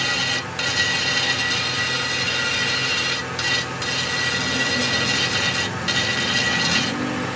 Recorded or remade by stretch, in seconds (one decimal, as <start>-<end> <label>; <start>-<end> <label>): 0.0-7.4 recorded